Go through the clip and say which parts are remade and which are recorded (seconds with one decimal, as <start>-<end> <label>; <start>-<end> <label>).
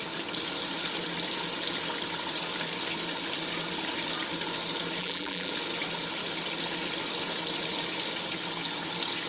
0.0-5.0 recorded; 5.0-5.5 remade; 5.5-9.3 recorded